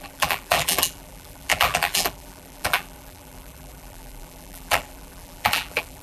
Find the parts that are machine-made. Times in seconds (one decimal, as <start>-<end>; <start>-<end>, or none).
0.0-6.0